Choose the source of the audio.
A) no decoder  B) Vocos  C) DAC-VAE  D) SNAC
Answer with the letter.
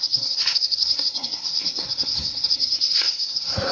D